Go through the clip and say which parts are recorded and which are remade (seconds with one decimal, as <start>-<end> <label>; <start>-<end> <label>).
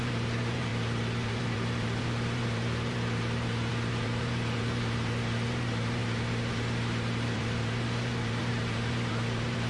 0.0-9.7 remade